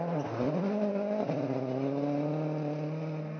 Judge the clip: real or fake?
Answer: real